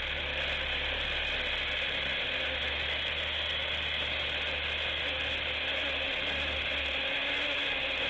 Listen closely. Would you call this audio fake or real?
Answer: real